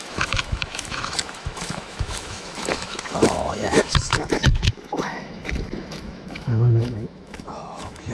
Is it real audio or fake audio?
fake